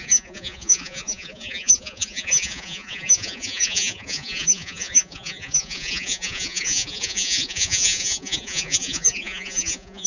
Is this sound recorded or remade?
remade